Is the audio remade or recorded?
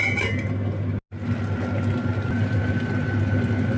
recorded